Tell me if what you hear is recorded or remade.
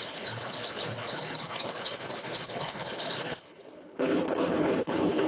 remade